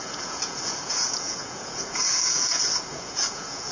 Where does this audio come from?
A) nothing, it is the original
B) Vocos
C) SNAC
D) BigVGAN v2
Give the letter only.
B